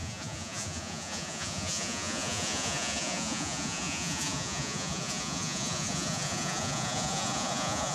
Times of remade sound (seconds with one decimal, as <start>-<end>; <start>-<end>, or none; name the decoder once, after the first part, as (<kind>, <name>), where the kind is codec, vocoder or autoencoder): 0.0-7.9 (vocoder, Vocos)